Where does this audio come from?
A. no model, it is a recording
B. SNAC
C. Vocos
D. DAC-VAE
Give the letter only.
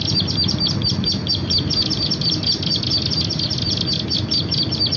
A